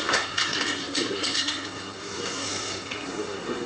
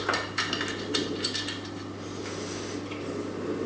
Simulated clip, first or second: first